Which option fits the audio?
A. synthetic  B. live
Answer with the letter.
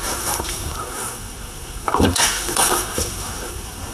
A